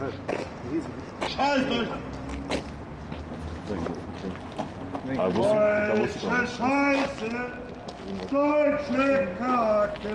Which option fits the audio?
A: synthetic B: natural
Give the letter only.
B